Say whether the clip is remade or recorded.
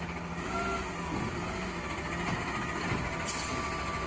recorded